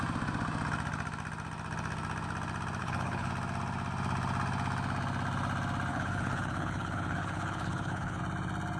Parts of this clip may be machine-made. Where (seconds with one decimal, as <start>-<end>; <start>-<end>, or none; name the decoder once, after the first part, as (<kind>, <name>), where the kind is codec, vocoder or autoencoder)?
2.8-3.3 (codec, HILCodec); 5.9-8.2